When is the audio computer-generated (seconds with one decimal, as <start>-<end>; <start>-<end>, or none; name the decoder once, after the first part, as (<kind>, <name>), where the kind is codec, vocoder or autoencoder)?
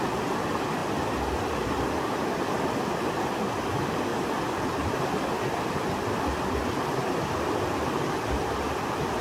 4.1-5.0 (vocoder, BigVGAN v2)